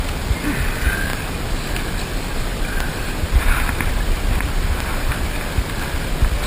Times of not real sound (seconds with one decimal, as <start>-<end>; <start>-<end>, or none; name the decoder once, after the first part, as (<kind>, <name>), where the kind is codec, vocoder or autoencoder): 2.5-5.1 (vocoder, BigVGAN v2)